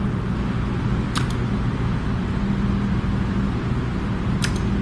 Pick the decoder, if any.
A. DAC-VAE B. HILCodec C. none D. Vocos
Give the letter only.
C